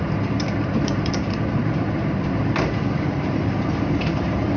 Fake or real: fake